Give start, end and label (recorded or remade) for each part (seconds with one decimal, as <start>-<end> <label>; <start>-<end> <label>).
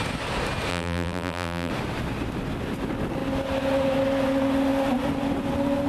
0.0-0.7 recorded; 0.7-1.7 remade; 1.7-5.9 recorded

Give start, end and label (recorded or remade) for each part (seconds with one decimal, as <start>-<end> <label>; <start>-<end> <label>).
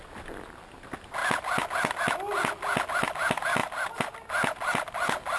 0.0-5.4 recorded